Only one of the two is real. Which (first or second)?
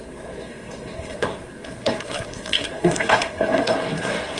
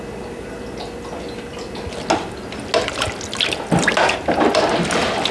second